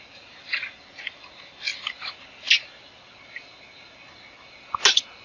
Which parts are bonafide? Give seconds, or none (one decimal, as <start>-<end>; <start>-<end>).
0.0-5.2